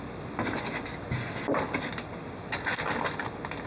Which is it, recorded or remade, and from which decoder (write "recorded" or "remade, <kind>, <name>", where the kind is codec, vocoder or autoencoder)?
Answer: recorded